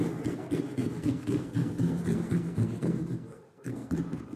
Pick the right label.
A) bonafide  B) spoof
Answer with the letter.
B